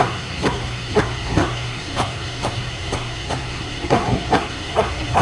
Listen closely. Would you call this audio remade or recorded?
remade